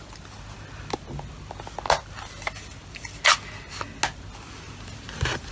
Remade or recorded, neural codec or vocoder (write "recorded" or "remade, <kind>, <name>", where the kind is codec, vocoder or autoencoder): recorded